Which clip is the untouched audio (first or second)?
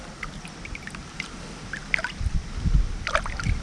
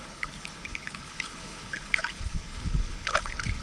first